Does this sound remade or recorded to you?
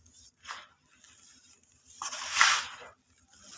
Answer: recorded